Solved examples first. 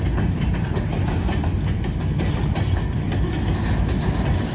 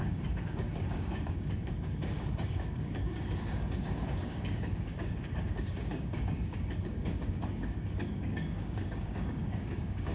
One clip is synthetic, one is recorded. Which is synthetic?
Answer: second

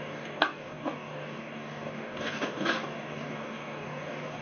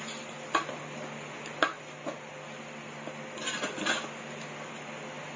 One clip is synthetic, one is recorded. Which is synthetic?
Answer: first